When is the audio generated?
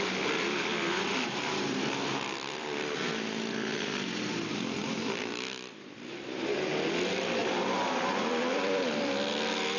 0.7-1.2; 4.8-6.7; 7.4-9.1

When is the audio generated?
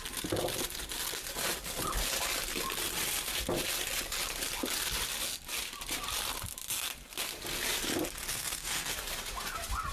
8.3-8.9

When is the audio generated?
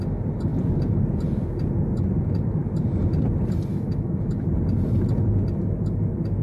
3.7-4.4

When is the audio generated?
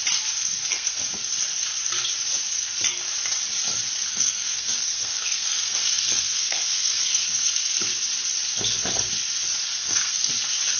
0.4-1.0; 4.1-7.7; 9.7-10.3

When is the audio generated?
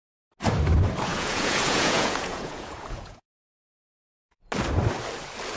1.1-4.5